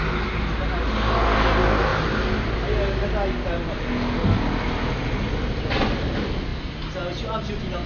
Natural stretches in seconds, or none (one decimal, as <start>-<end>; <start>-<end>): 0.0-7.9